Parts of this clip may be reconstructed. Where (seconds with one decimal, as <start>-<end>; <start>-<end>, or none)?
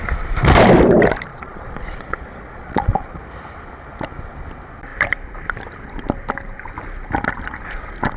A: 1.3-3.2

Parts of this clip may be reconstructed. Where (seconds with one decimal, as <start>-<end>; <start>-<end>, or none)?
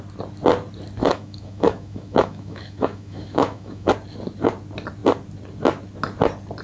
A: 1.0-3.9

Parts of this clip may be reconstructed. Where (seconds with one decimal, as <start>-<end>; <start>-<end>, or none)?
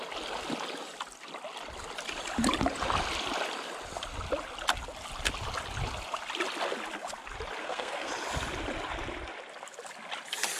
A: 7.6-8.1